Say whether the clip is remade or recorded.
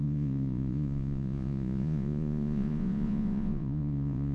remade